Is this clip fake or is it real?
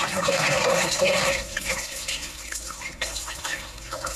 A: fake